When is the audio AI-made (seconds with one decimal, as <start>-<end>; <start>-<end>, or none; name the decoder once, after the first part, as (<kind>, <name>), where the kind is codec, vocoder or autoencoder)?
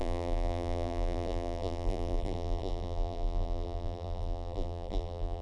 0.0-5.4 (vocoder, BigVGAN v2)